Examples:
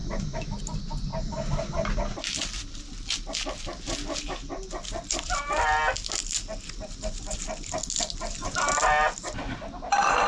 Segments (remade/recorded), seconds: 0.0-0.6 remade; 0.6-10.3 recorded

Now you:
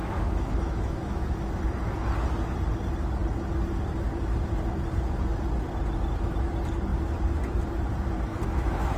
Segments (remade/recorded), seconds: 0.0-1.6 remade; 1.6-8.3 recorded; 8.3-9.0 remade

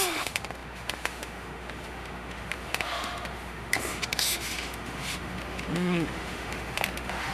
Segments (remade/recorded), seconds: 0.0-7.3 remade

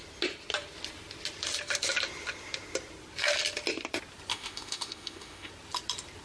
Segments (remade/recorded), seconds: 0.0-4.3 recorded; 4.3-5.5 remade; 5.5-6.2 recorded